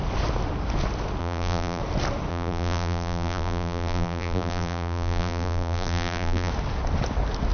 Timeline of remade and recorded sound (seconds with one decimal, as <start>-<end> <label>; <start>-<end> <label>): 0.0-1.2 recorded; 1.2-1.8 remade; 1.8-2.3 recorded; 2.3-6.5 remade; 6.5-7.5 recorded